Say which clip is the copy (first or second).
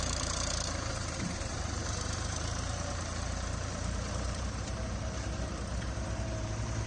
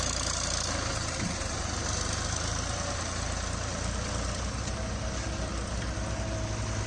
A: first